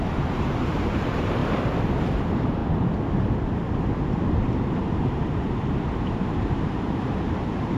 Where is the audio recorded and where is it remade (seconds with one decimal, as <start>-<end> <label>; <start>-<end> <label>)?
0.0-1.4 remade; 1.4-2.0 recorded; 2.0-2.6 remade; 2.6-4.9 recorded; 4.9-7.8 remade